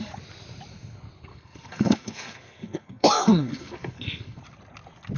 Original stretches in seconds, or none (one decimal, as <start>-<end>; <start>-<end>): 0.0-1.3; 4.4-5.2